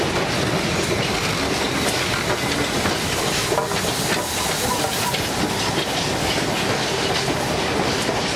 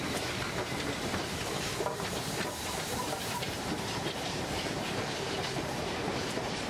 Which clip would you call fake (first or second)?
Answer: second